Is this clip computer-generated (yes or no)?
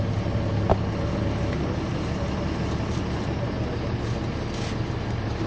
no